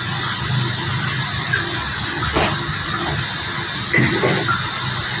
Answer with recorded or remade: recorded